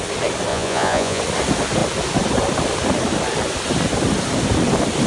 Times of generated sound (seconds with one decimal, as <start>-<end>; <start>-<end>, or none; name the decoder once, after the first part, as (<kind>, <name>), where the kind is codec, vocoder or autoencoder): 0.5-1.2 (vocoder, Vocos)